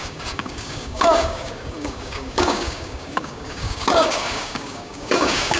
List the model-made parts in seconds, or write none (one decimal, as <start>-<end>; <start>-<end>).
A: 0.0-5.6